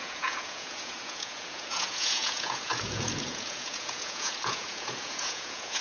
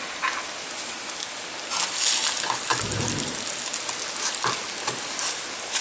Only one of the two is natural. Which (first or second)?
second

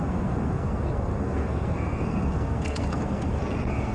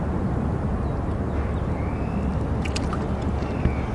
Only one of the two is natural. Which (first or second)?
second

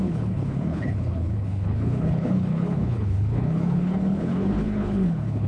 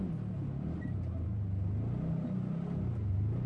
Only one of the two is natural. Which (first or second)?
second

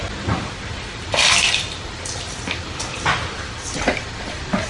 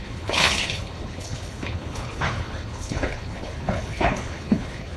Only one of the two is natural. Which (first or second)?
first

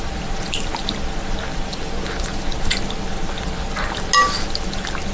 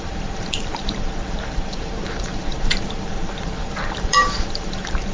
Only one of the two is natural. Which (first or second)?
first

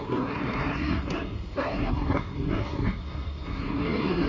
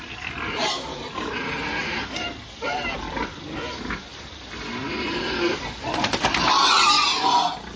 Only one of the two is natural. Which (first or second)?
second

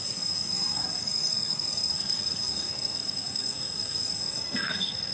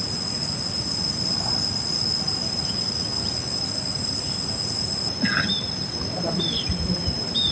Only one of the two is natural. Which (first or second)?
second